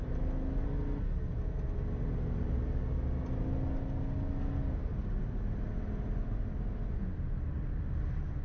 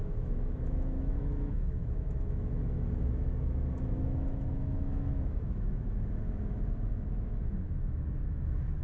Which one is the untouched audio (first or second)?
first